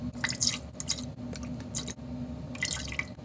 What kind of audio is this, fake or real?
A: real